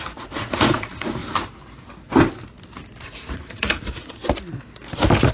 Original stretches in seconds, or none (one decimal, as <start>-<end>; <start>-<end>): 1.2-3.0; 4.2-5.3